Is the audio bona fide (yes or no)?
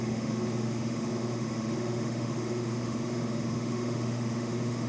no